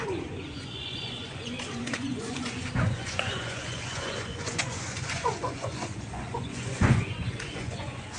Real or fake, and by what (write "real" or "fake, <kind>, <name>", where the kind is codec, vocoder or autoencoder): fake, vocoder, Vocos